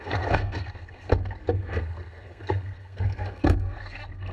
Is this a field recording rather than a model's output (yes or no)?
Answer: no